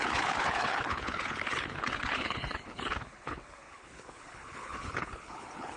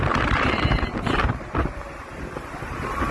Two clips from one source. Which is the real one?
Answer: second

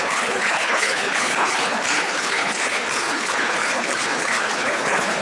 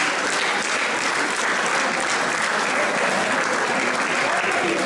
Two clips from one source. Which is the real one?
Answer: second